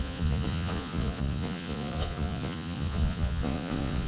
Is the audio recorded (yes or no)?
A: no